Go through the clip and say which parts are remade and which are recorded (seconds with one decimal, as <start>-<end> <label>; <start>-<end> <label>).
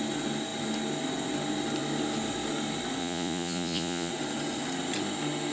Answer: 0.0-3.0 recorded; 3.0-4.1 remade; 4.1-5.5 recorded